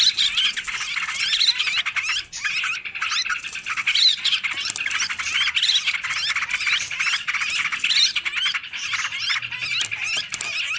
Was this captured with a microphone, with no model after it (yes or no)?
yes